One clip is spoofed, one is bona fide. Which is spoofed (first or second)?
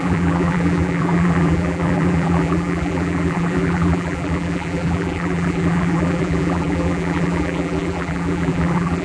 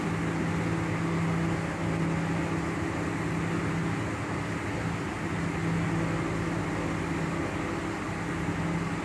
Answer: first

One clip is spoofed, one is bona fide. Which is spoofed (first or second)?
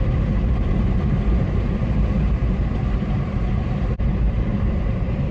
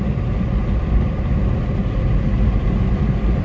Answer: first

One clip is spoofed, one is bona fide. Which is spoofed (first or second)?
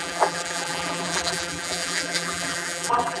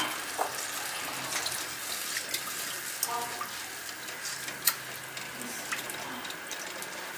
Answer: first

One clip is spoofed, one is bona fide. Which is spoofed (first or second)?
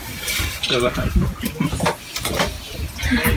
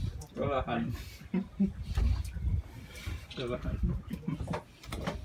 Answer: first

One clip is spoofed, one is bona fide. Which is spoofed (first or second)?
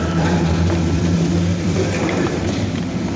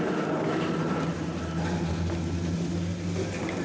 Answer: first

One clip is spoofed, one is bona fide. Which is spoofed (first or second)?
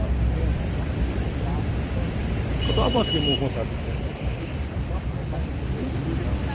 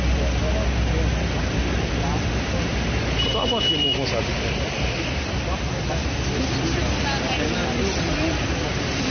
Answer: first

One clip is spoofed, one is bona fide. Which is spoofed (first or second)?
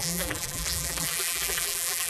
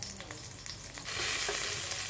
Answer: first